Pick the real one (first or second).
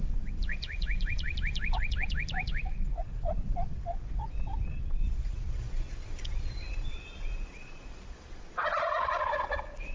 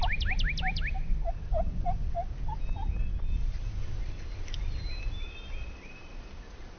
second